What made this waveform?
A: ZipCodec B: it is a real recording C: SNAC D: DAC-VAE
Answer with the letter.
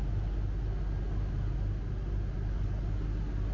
B